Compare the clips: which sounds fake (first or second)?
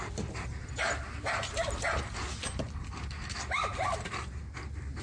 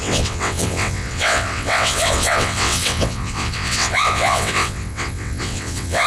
second